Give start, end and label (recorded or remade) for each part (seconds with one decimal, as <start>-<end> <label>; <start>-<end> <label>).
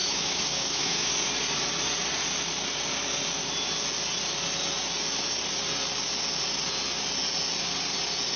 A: 0.0-1.1 remade; 1.1-8.4 recorded